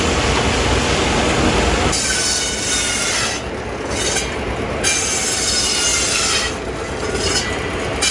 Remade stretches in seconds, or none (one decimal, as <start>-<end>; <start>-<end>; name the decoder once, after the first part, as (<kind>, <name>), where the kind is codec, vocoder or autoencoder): none